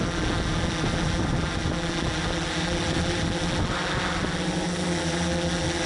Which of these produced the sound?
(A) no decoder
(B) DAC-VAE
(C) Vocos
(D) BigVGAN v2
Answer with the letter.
A